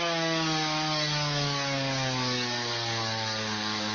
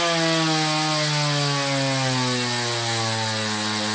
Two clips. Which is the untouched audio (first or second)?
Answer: second